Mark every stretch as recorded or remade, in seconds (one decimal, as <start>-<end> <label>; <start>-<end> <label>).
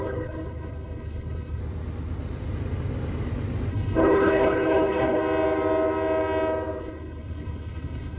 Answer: 0.0-1.6 remade; 1.6-3.7 recorded; 3.7-5.2 remade; 5.2-6.8 recorded; 6.8-8.2 remade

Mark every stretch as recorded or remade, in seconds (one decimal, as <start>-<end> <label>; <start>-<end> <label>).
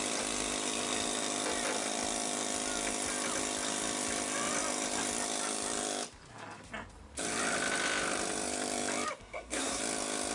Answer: 0.0-9.2 recorded; 9.2-9.8 remade; 9.8-10.3 recorded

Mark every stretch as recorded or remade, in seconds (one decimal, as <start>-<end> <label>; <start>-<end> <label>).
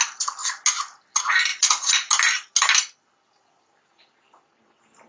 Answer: 0.0-1.5 recorded; 1.5-2.1 remade; 2.1-5.1 recorded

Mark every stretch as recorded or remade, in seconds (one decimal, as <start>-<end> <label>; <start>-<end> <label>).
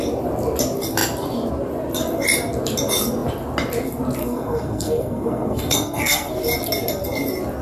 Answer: 0.0-4.2 recorded; 4.2-6.4 remade; 6.4-7.6 recorded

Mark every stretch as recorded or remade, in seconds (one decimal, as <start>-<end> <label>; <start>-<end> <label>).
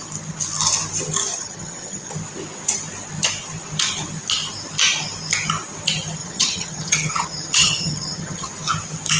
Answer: 0.0-1.3 recorded; 1.3-2.1 remade; 2.1-6.2 recorded; 6.2-8.5 remade; 8.5-9.2 recorded